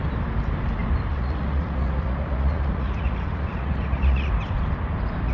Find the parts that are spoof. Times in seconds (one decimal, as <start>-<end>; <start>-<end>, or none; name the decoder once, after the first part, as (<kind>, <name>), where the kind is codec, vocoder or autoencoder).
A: 1.1-4.3 (vocoder, Vocos)

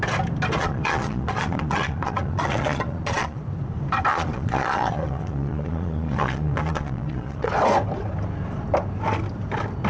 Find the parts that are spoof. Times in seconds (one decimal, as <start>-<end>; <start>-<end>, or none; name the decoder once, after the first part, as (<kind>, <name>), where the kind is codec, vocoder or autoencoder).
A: 0.6-3.4 (vocoder, Vocos); 4.1-7.5

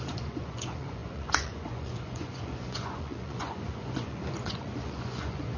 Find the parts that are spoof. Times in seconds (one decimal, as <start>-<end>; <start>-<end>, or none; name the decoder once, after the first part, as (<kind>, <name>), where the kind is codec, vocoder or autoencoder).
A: 0.0-5.6 (vocoder, Vocos)

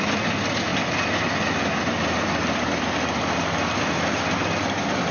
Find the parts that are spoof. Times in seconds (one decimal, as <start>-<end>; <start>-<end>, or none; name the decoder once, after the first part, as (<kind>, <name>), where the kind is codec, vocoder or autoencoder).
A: none

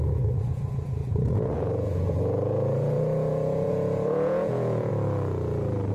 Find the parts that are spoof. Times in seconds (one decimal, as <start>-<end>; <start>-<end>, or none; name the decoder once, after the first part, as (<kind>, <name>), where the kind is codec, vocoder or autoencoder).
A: 0.0-4.9 (vocoder, Vocos)

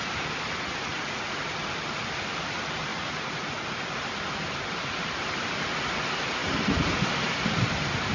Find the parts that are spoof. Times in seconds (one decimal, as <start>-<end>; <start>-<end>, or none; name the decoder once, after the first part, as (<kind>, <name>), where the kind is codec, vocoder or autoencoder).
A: 0.9-1.5 (vocoder, Vocos); 2.9-3.6